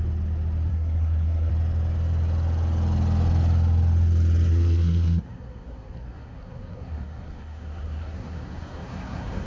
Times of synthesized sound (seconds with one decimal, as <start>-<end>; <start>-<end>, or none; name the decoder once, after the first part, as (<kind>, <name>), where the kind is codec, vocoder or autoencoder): 0.7-1.5 (codec, SNAC); 4.5-9.5